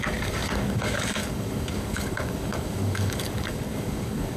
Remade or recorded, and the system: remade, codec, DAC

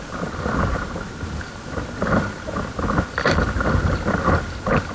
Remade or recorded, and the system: recorded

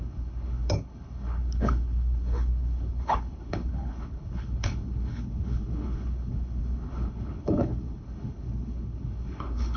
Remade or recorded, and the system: remade, codec, HILCodec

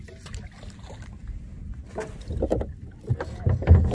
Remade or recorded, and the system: recorded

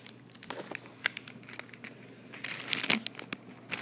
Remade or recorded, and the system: recorded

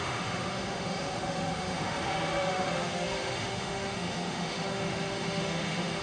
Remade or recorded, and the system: remade, autoencoder, DAC-VAE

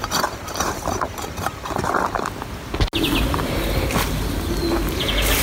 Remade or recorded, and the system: recorded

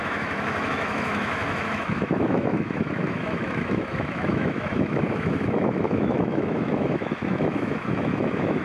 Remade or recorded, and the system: remade, autoencoder, DAC-VAE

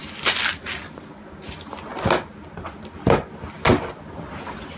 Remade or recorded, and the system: recorded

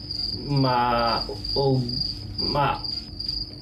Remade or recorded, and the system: recorded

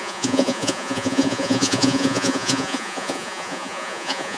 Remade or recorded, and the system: remade, vocoder, Vocos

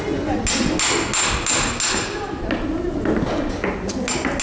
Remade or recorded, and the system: recorded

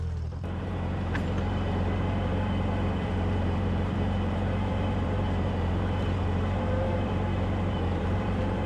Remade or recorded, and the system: remade, vocoder, BigVGAN v2